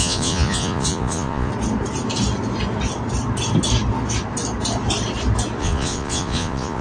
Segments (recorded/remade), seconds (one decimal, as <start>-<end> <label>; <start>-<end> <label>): 0.0-1.5 remade; 1.5-5.6 recorded; 5.6-6.8 remade